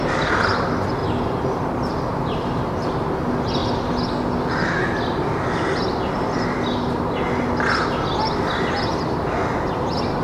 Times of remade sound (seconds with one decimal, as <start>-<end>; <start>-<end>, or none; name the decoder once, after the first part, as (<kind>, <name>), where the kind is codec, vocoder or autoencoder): none